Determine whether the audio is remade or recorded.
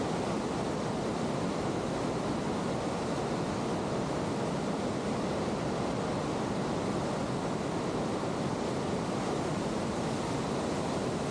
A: recorded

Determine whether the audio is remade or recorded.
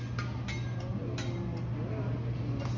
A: recorded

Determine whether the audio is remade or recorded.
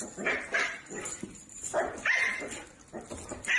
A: recorded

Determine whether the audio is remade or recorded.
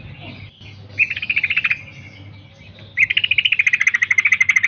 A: recorded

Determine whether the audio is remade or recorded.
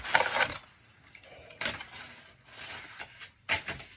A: recorded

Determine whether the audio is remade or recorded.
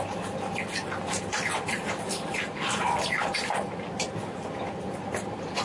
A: remade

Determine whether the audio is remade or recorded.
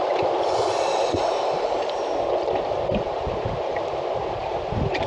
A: remade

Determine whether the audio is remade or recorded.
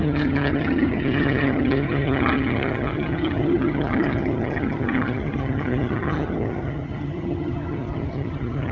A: remade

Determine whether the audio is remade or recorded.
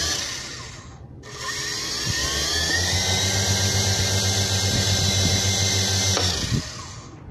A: recorded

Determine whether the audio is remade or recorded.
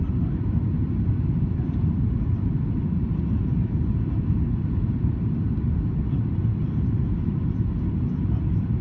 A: remade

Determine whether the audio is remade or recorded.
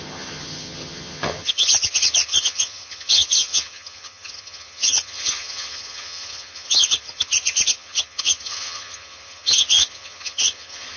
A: remade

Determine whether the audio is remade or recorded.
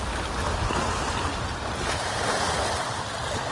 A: recorded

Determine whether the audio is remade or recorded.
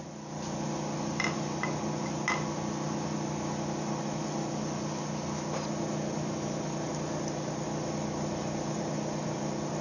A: recorded